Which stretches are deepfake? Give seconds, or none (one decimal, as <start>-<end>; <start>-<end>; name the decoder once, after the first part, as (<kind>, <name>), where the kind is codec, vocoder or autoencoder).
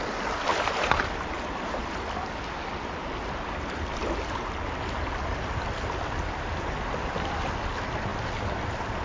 none